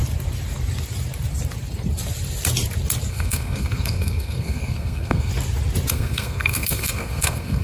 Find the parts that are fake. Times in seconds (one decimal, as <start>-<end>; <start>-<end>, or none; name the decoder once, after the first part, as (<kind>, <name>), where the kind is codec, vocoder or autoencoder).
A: 3.1-5.3 (codec, SNAC); 5.9-7.6